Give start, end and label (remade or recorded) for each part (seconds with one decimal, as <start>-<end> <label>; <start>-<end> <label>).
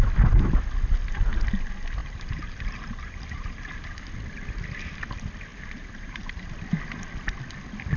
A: 0.0-2.0 recorded; 2.0-4.0 remade; 4.0-5.5 recorded; 5.5-6.5 remade; 6.5-8.0 recorded